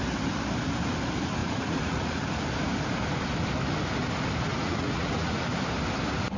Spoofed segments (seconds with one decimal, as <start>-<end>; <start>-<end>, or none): 1.4-2.2; 4.5-5.4